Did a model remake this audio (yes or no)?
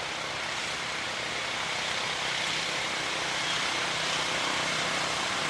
no